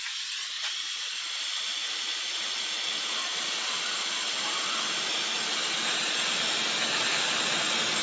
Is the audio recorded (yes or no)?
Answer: yes